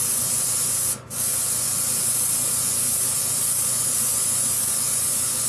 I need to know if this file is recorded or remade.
remade